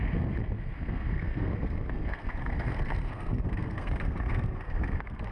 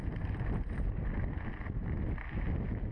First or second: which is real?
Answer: second